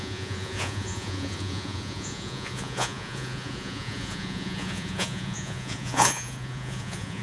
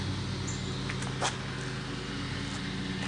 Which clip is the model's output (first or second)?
first